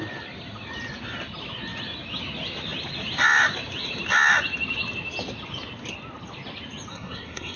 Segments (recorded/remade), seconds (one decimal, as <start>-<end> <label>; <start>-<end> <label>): 0.0-6.9 recorded; 6.9-7.6 remade